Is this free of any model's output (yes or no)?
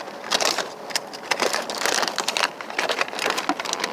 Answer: yes